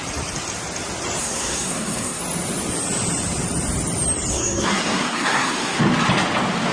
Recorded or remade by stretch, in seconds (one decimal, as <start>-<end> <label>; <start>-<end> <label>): 0.0-1.2 recorded; 1.2-2.2 remade; 2.2-4.3 recorded; 4.3-5.8 remade; 5.8-6.7 recorded